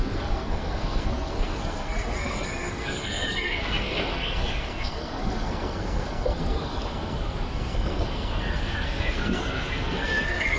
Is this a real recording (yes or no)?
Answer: no